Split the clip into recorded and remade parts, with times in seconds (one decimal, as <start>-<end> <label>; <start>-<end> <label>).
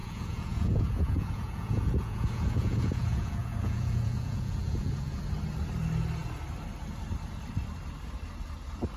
0.0-5.2 remade; 5.2-9.0 recorded